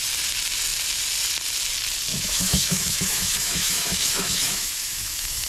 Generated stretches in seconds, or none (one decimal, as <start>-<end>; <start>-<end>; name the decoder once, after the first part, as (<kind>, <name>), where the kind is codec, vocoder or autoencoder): 2.1-5.5 (autoencoder, DAC-VAE)

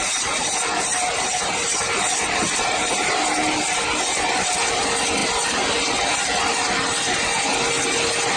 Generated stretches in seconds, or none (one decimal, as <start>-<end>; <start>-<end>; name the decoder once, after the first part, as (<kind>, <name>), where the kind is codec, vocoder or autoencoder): none

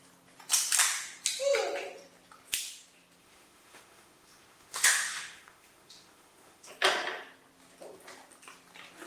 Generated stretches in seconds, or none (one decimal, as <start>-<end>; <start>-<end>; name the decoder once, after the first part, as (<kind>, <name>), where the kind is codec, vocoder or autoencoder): 3.2-6.7 (autoencoder, DAC-VAE)

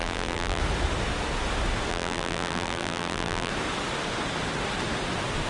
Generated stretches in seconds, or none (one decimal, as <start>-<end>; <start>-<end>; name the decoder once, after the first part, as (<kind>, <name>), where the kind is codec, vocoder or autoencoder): 0.0-0.6 (vocoder, BigVGAN v2); 1.9-3.5

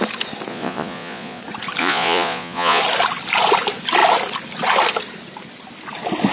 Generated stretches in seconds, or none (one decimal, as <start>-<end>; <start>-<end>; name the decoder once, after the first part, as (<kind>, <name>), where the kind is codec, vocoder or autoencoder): 0.5-1.4 (vocoder, Vocos); 1.8-2.8